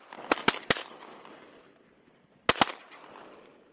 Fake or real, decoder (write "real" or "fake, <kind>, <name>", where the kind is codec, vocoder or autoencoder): real